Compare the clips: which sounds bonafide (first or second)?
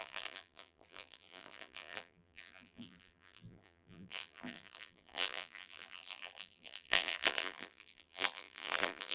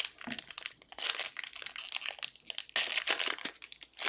second